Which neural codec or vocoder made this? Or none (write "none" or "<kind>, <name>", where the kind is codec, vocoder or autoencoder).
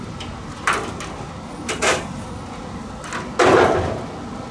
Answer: none